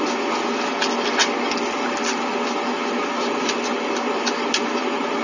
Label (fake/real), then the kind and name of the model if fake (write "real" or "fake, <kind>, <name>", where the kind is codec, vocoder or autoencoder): real